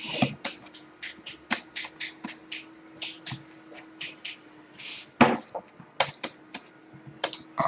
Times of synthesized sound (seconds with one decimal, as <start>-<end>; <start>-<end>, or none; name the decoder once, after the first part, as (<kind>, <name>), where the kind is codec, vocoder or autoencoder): none